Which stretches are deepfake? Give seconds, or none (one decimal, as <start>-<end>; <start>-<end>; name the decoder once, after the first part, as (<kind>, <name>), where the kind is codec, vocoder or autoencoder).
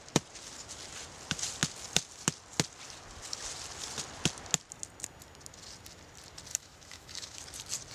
6.5-7.4 (autoencoder, DAC-VAE)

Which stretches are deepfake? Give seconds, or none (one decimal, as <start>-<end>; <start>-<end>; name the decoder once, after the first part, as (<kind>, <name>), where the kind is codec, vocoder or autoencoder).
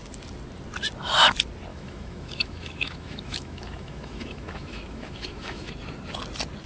1.7-5.7 (autoencoder, DAC-VAE)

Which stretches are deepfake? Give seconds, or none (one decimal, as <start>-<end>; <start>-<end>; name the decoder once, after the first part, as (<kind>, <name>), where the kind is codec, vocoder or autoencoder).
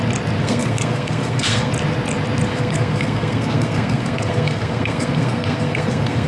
0.4-1.7 (codec, SNAC); 2.5-6.3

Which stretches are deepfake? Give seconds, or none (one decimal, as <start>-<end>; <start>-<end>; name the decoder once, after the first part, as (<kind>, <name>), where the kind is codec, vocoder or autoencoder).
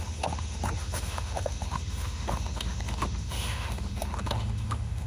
0.0-5.1 (autoencoder, DAC-VAE)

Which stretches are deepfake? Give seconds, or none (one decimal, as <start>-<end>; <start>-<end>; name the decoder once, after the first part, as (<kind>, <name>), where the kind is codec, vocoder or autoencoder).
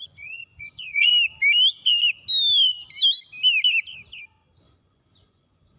0.0-1.1 (vocoder, Vocos); 4.6-5.8